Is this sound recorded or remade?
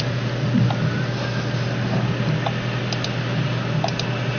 recorded